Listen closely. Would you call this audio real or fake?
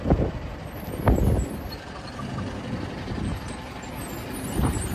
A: real